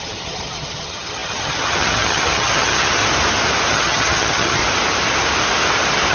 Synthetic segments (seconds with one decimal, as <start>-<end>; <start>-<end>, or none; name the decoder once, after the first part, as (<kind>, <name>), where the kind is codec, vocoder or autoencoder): 0.0-3.0 (vocoder, HiFi-GAN); 3.7-4.6